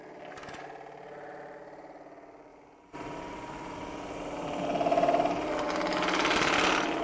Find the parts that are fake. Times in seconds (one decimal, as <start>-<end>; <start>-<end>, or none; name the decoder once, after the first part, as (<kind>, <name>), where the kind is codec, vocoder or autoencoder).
none